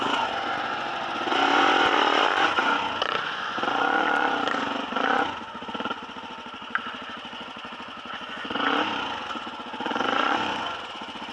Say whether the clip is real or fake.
fake